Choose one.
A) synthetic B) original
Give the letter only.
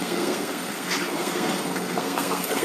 A